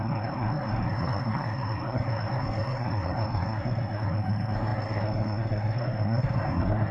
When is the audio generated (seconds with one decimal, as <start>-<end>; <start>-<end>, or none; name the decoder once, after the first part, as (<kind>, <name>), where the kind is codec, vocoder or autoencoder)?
0.0-6.9 (codec, SNAC)